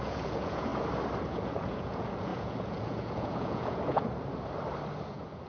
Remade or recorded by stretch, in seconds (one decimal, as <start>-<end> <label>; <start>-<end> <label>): 0.0-0.7 remade; 0.7-1.3 recorded; 1.3-4.1 remade; 4.1-5.1 recorded; 5.1-5.5 remade